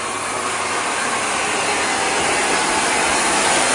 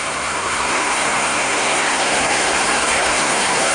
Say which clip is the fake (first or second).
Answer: second